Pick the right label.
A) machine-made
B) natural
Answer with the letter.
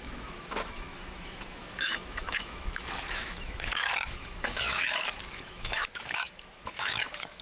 A